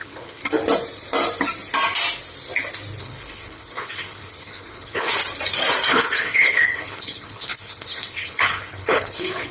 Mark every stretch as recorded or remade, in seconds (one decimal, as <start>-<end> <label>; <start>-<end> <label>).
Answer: 0.0-0.4 remade; 0.4-3.0 recorded; 3.0-5.1 remade; 5.1-5.9 recorded; 5.9-9.5 remade

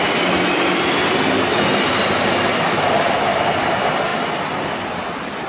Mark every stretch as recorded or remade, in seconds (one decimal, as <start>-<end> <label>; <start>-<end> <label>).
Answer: 0.0-5.5 recorded

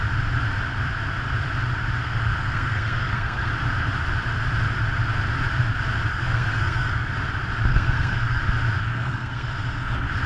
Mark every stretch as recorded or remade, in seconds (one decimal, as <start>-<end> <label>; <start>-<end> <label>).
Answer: 0.0-2.0 recorded; 2.0-3.5 remade; 3.5-6.1 recorded; 6.1-7.1 remade; 7.1-7.7 recorded; 7.7-8.4 remade; 8.4-8.9 recorded; 8.9-9.5 remade; 9.5-10.3 recorded

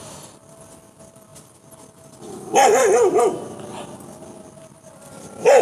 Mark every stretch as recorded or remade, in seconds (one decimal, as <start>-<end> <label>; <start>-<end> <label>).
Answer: 0.0-1.3 remade; 1.3-4.7 recorded; 4.7-5.6 remade

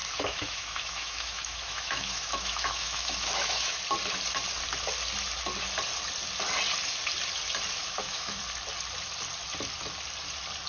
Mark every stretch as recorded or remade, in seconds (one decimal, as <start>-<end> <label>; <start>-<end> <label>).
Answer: 0.0-3.8 remade; 3.8-7.8 recorded; 7.8-8.4 remade; 8.4-10.7 recorded

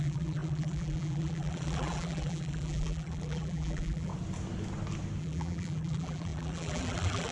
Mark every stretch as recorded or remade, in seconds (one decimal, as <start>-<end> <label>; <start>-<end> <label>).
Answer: 0.0-4.1 remade; 4.1-5.2 recorded; 5.2-7.3 remade

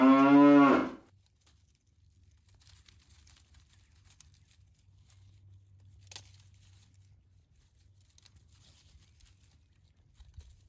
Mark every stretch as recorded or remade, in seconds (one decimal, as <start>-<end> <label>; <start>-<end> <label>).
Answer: 0.0-10.7 recorded